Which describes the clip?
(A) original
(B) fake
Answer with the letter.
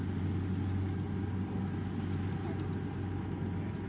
A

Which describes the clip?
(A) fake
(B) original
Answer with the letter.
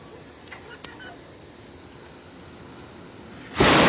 B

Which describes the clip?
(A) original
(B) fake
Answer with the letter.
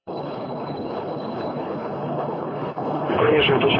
B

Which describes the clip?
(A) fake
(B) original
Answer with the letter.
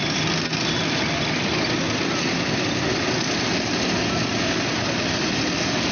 B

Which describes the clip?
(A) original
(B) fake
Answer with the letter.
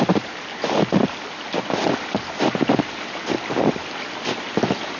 A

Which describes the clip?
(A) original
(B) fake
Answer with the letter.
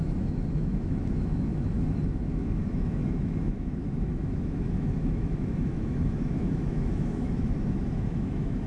B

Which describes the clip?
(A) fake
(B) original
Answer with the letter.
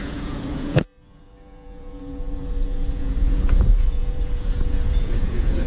A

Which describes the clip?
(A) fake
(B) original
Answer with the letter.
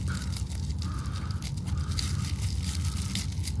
B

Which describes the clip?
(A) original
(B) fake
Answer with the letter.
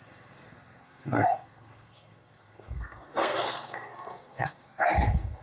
B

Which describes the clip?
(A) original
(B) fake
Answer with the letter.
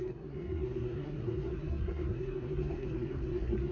B